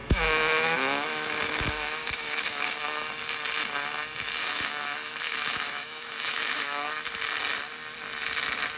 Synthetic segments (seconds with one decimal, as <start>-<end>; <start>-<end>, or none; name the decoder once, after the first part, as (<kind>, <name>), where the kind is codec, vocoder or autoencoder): 0.0-3.1 (autoencoder, DAC-VAE); 4.4-7.2